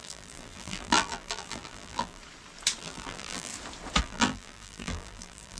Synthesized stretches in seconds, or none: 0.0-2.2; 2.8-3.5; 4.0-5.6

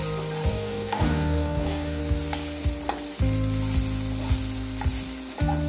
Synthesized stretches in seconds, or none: 0.5-2.0